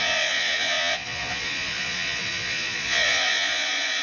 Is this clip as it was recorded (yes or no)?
no